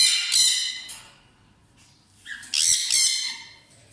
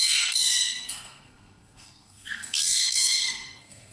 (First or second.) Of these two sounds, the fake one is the second